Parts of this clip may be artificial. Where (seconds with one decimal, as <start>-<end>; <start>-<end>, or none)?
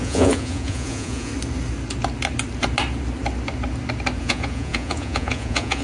0.0-1.3; 4.2-5.8